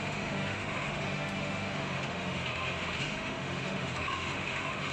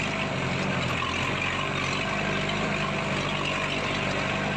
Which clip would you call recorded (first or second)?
second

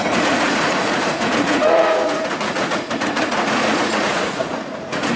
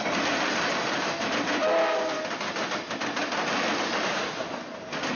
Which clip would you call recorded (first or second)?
second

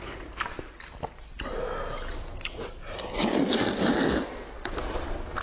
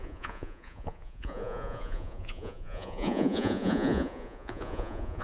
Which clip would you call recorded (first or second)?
first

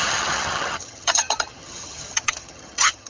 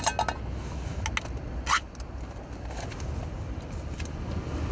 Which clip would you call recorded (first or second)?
second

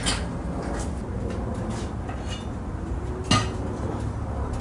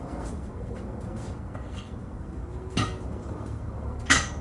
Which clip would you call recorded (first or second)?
first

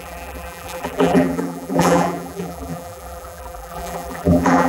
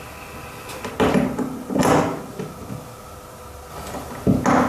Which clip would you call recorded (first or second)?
second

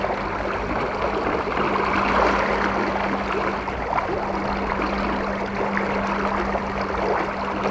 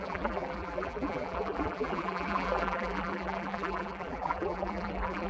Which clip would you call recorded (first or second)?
first